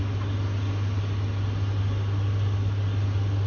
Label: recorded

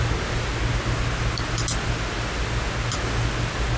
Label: recorded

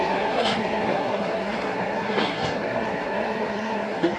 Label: remade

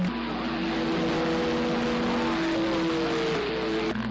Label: recorded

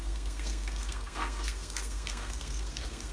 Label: remade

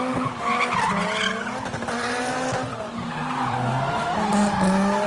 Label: recorded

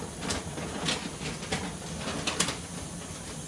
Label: recorded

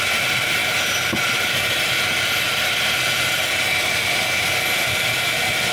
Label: recorded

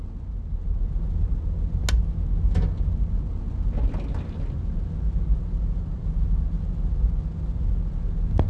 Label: recorded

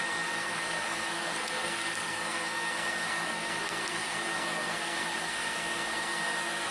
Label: remade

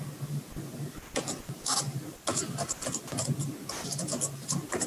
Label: recorded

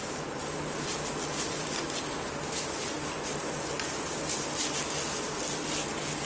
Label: recorded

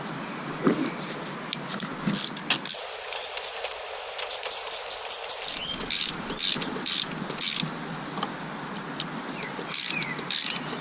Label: recorded